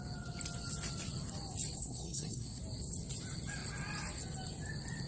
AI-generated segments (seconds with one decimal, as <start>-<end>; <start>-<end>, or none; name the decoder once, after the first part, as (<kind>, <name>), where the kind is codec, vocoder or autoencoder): 1.8-2.6 (codec, SNAC)